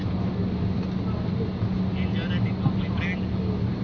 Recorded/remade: recorded